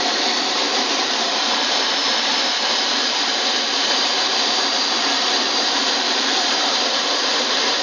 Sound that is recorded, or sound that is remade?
remade